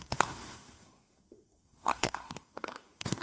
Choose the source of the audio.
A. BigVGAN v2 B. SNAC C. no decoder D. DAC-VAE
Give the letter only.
B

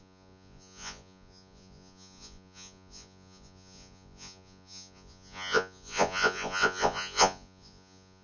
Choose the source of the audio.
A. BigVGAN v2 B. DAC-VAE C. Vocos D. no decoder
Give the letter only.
C